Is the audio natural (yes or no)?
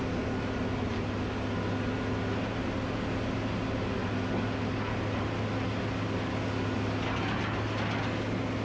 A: yes